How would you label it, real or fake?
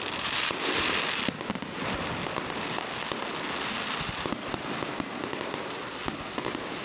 real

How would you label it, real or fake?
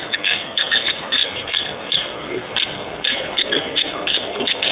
fake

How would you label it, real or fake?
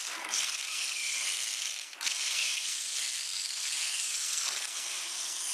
fake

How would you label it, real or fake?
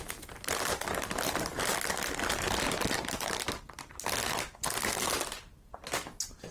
real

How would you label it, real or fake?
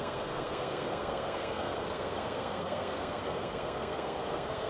fake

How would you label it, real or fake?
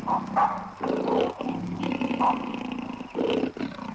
real